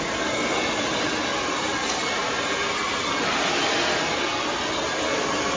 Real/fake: real